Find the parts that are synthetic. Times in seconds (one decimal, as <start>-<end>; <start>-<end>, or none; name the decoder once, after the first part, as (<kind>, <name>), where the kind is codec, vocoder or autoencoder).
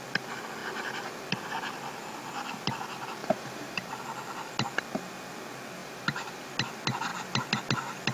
3.2-4.0 (vocoder, BigVGAN v2); 5.8-6.5